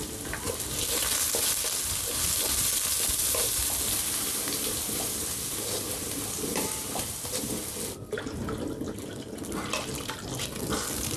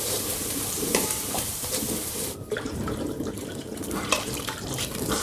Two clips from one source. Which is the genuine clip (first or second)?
first